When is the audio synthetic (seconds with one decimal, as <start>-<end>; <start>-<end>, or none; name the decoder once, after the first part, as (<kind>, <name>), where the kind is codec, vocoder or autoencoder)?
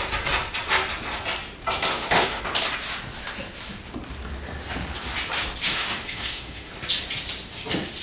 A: 1.9-2.4 (autoencoder, DAC-VAE); 5.7-6.7